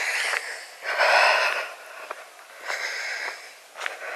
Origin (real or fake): real